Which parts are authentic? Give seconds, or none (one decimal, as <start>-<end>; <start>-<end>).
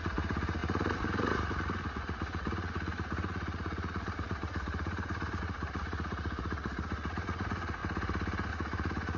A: 7.8-8.5